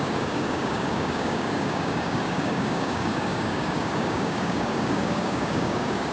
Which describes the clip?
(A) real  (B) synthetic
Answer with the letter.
B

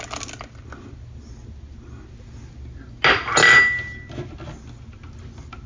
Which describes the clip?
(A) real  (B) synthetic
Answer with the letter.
A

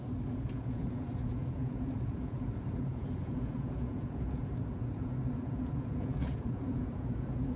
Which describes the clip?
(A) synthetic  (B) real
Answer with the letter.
A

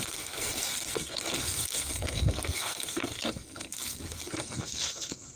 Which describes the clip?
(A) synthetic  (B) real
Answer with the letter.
A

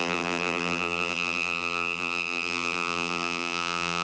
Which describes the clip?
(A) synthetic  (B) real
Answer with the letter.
A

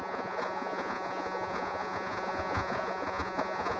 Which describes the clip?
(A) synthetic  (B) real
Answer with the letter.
A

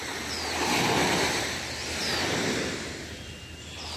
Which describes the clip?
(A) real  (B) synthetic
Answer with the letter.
B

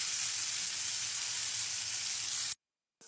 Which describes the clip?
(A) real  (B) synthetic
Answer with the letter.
A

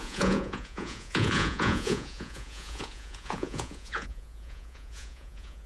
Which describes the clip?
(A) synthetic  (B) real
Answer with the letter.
A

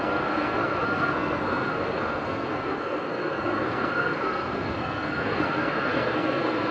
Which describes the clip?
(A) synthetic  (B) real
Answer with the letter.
A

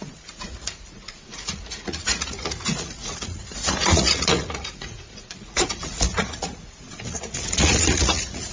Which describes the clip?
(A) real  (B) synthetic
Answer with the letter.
B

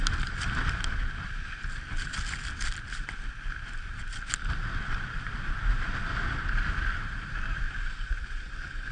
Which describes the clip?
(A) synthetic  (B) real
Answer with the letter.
B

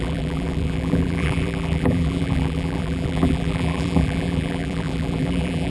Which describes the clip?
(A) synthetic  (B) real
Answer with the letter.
A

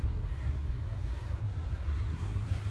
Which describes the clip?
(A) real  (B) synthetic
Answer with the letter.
B